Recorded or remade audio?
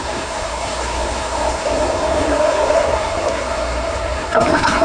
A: remade